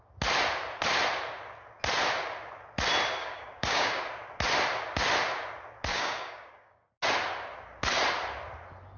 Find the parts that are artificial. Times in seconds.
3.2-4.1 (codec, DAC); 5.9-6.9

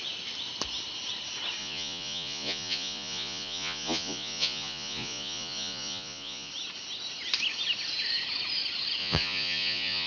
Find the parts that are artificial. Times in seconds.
1.6-6.5 (vocoder, Vocos); 9.0-10.1

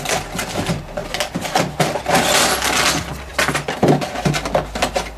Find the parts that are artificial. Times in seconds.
none